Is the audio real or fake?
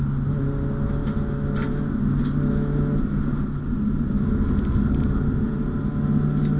real